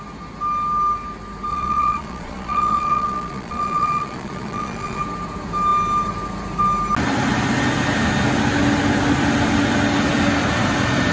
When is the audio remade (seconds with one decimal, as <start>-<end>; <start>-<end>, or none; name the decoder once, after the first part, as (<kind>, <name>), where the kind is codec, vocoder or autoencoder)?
1.5-5.0 (vocoder, Vocos)